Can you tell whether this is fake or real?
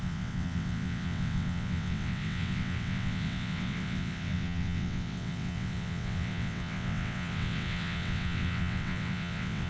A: fake